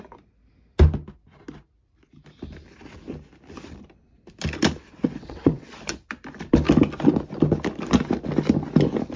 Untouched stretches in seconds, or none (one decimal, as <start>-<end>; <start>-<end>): 0.0-4.8; 5.7-9.2